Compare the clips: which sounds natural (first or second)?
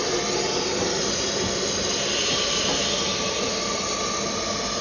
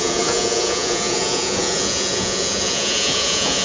first